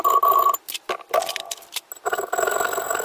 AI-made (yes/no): no